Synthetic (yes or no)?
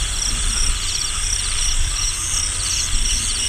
no